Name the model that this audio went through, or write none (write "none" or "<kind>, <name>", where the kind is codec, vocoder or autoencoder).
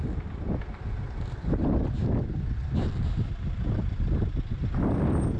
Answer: none